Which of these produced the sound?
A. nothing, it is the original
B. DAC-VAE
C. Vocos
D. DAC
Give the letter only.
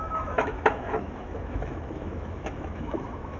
B